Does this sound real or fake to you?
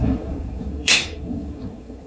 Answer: fake